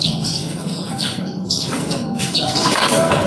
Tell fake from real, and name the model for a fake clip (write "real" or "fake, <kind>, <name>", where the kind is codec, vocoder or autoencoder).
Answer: fake, codec, SNAC